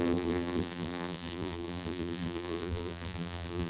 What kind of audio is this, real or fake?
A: fake